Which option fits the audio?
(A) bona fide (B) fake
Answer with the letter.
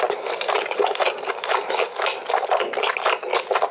A